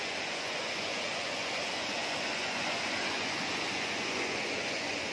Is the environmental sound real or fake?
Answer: fake